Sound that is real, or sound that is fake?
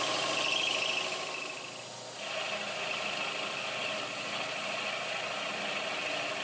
real